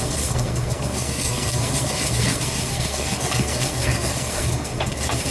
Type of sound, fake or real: fake